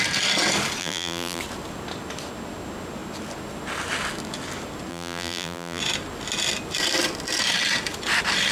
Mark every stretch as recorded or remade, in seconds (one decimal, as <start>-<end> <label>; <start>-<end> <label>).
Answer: 0.0-0.8 recorded; 0.8-1.4 remade; 1.4-4.9 recorded; 4.9-5.8 remade; 5.8-8.5 recorded